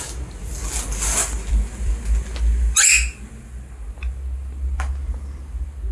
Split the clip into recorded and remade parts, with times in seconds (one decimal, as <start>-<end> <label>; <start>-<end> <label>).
0.0-1.2 recorded; 1.2-1.9 remade; 1.9-5.9 recorded